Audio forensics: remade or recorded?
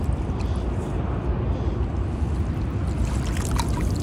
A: recorded